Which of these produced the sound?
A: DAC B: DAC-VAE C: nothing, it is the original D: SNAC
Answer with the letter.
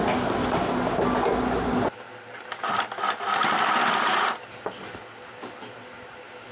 C